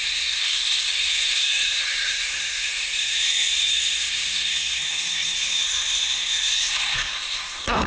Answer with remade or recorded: remade